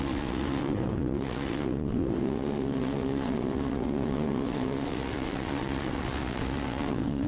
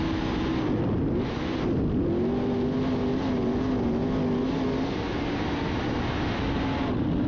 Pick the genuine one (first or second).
second